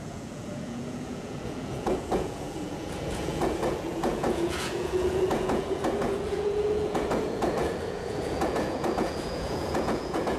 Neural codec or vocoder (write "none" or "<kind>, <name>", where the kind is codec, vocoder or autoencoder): vocoder, Vocos